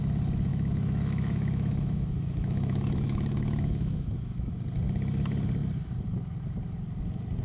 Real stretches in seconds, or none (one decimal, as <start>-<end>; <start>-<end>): 0.0-0.5; 4.5-7.4